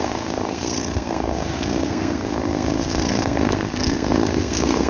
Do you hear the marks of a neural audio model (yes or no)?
yes